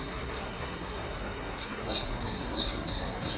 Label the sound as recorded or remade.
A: remade